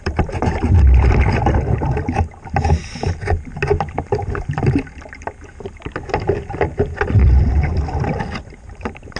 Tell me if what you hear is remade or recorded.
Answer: recorded